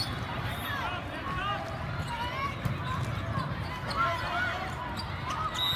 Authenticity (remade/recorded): recorded